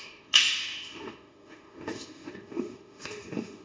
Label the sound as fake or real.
fake